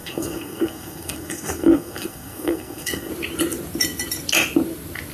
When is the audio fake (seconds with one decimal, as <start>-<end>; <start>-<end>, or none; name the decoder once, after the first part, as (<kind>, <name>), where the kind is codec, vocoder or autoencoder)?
0.0-3.1 (codec, SNAC)